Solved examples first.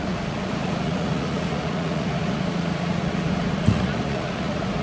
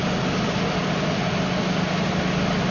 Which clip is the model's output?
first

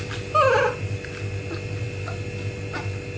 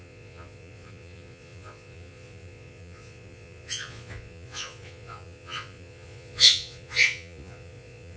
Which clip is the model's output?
second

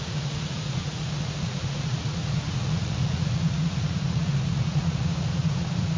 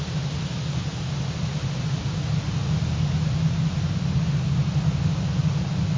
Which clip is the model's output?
first